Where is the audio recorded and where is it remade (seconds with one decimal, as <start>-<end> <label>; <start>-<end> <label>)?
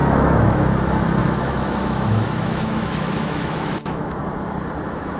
0.0-0.6 remade; 0.6-1.2 recorded; 1.2-4.2 remade; 4.2-5.2 recorded